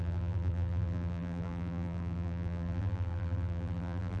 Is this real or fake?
fake